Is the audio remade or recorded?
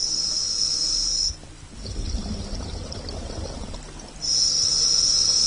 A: recorded